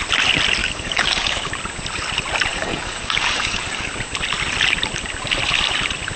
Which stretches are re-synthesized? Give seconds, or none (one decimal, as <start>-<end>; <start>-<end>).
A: 0.6-1.5; 2.5-3.9